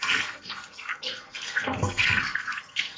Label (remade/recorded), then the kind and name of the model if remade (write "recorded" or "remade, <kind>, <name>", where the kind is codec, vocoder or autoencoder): remade, codec, SNAC